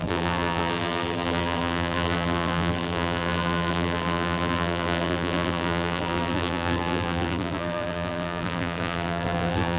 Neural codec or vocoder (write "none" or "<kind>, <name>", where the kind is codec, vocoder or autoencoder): vocoder, BigVGAN v2